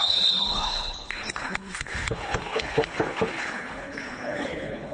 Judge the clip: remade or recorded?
remade